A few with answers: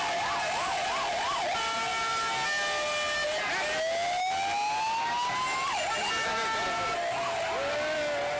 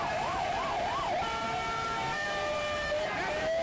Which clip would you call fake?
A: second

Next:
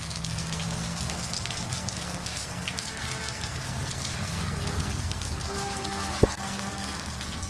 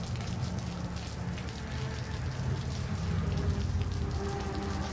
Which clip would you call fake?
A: first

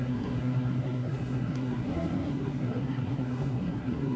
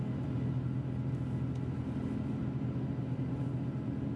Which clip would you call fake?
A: first